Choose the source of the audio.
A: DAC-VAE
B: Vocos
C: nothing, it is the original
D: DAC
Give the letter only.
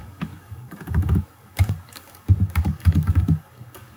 D